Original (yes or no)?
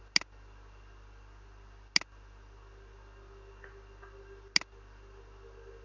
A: yes